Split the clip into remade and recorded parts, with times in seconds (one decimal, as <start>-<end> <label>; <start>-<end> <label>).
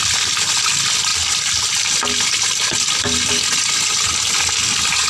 0.0-1.1 recorded; 1.1-3.3 remade; 3.3-5.1 recorded